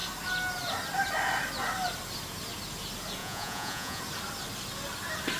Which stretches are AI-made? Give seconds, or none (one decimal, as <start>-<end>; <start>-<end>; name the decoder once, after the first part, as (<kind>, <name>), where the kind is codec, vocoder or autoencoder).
3.2-4.0 (vocoder, Vocos)